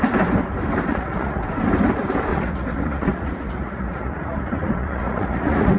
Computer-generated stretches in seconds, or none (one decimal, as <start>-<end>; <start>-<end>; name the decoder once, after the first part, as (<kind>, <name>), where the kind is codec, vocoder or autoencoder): 0.9-1.4 (vocoder, Vocos); 2.3-5.8